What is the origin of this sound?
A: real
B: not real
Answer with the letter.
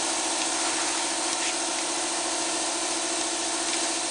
A